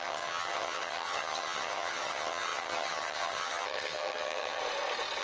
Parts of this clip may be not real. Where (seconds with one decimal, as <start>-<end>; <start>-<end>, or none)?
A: 0.0-4.6